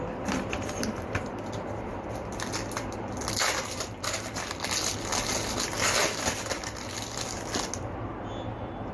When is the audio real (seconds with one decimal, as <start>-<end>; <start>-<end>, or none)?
0.0-8.9